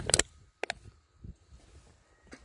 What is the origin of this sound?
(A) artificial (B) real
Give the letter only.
B